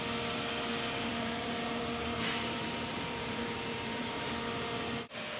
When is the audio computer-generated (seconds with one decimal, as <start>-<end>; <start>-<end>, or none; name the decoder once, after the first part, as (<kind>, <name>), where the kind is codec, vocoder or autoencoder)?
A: 1.1-4.3 (vocoder, BigVGAN v2)